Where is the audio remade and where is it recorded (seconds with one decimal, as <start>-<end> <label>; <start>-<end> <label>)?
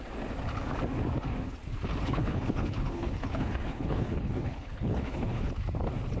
0.0-2.0 recorded; 2.0-5.5 remade; 5.5-6.2 recorded